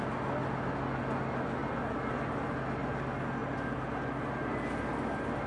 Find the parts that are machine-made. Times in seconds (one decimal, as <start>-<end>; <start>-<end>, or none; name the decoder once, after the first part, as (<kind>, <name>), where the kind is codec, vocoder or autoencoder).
none